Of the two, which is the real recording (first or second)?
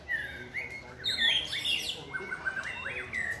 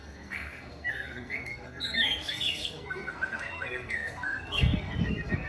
first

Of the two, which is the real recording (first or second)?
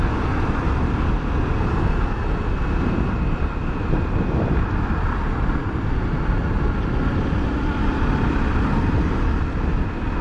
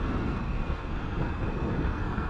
first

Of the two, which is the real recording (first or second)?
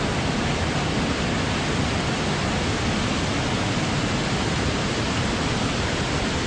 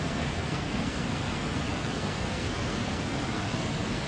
first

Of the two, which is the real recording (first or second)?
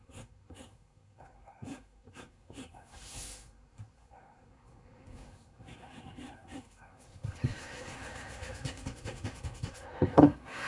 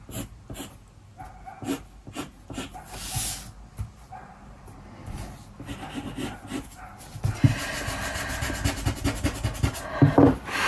second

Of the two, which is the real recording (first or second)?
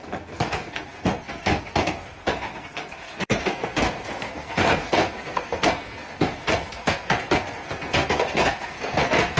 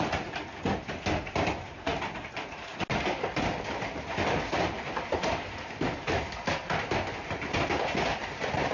second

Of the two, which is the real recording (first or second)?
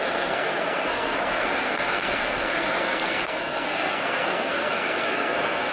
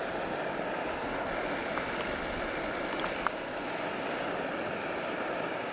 second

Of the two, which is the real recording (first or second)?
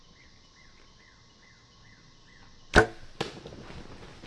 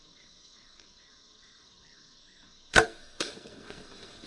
first